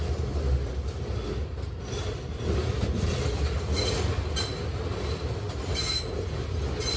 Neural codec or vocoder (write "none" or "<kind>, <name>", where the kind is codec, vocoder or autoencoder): none